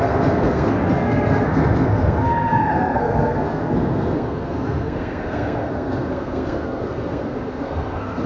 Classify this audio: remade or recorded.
remade